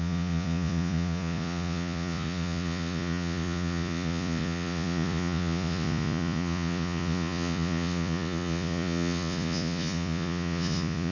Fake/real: fake